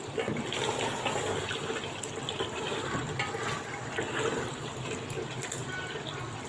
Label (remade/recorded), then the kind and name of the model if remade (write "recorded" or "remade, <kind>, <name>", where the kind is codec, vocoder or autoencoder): recorded